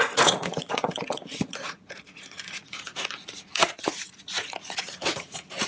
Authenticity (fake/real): fake